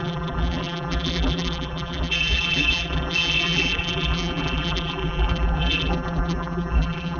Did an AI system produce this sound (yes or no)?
yes